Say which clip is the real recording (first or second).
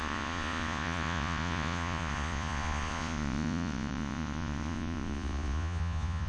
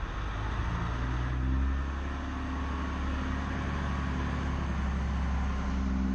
second